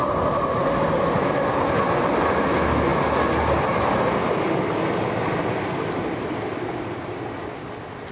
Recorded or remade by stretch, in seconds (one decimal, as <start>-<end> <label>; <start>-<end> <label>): 0.0-8.1 recorded